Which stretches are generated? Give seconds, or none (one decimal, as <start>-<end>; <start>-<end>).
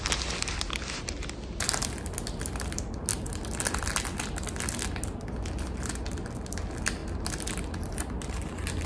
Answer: none